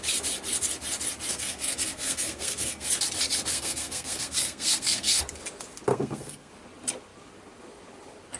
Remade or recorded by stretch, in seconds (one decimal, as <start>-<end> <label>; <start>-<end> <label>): 0.0-1.3 recorded; 1.3-2.9 remade; 2.9-3.5 recorded; 3.5-5.2 remade; 5.2-5.9 recorded; 5.9-6.5 remade; 6.5-8.4 recorded